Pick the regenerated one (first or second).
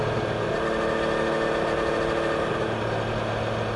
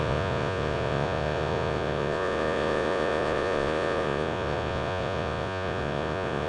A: second